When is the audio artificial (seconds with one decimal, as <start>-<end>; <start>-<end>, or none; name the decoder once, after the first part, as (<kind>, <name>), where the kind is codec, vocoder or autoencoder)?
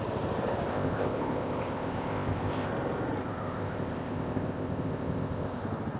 0.7-2.7 (codec, ZipCodec); 3.2-5.6